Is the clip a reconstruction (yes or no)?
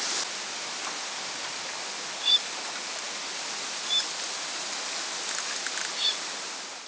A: no